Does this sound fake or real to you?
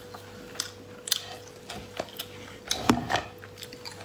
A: real